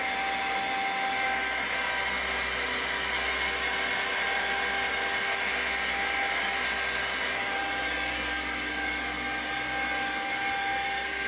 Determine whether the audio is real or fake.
real